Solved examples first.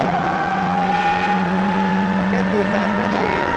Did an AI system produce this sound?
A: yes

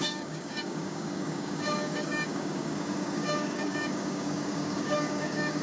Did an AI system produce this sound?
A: yes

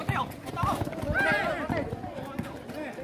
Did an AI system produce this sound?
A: no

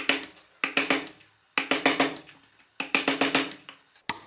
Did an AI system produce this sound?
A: no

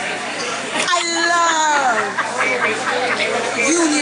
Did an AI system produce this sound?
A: yes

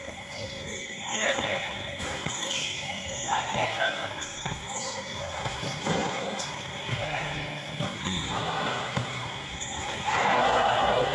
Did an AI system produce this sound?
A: yes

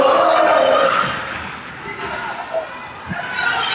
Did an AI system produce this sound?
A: no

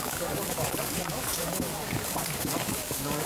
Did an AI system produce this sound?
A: yes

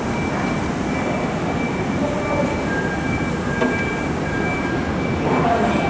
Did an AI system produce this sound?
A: no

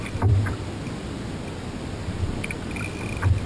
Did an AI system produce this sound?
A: no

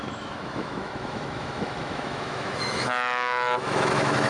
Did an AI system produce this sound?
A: yes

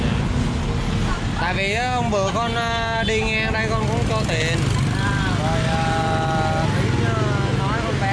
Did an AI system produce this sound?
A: no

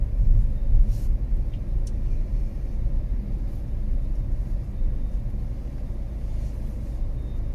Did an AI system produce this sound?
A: no